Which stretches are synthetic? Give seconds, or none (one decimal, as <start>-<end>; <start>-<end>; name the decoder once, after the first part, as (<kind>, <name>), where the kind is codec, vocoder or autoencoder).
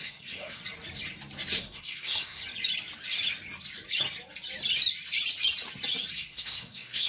0.0-0.6 (codec, SNAC); 1.6-2.4; 6.1-7.1